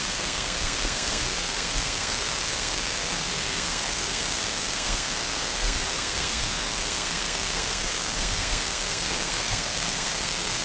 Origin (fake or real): fake